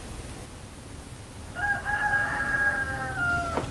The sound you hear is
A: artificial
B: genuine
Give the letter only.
B